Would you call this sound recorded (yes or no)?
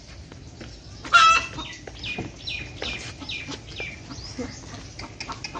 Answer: yes